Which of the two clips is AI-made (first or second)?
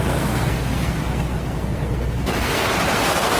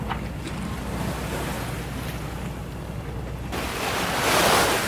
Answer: first